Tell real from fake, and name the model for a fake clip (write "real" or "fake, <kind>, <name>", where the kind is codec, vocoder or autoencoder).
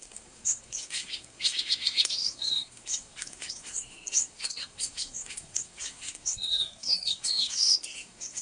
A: fake, codec, SNAC